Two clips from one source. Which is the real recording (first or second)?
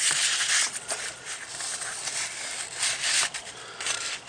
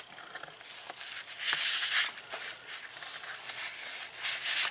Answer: second